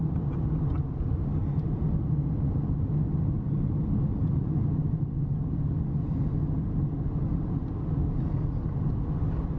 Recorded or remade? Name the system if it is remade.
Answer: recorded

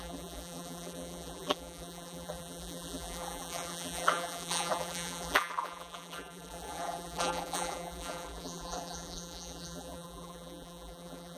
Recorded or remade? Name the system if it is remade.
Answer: remade, vocoder, BigVGAN v2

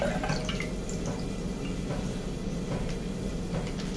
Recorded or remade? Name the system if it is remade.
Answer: recorded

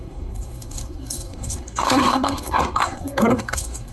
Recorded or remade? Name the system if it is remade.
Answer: remade, codec, SNAC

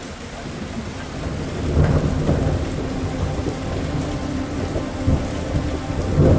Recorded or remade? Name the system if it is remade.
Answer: recorded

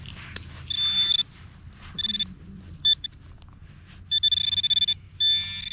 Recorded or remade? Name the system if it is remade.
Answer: recorded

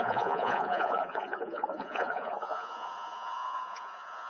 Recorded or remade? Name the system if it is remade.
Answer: remade, vocoder, Vocos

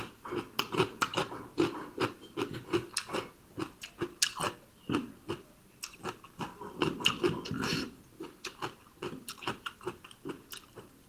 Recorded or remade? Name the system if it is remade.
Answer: recorded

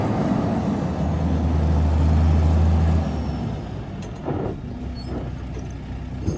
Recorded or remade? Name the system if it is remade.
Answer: recorded